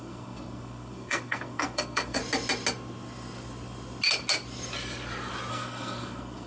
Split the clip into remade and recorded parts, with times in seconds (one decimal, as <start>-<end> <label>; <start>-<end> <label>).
0.0-2.2 remade; 2.2-5.5 recorded; 5.5-6.5 remade